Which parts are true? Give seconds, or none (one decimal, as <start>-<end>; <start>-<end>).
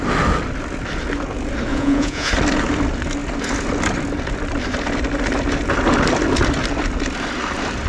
0.0-1.7; 2.3-7.9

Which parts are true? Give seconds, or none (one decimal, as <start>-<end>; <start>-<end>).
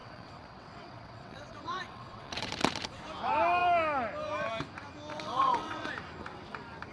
2.5-5.1; 5.9-6.9